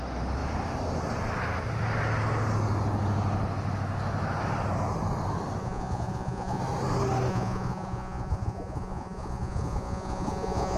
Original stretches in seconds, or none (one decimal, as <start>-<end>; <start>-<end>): 0.0-5.6; 6.6-7.3